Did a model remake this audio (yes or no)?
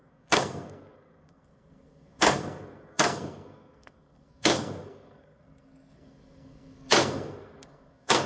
yes